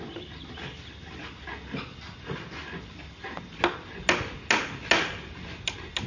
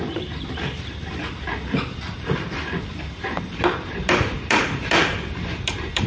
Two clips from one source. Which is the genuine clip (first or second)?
first